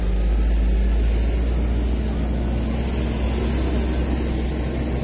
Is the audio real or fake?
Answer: real